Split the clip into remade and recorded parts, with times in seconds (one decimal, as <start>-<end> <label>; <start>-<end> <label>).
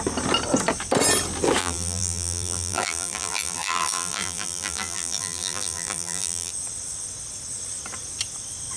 0.0-1.6 recorded; 1.6-6.5 remade; 6.5-8.8 recorded